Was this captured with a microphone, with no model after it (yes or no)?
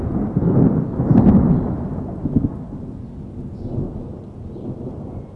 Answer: yes